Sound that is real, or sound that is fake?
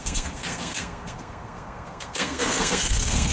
fake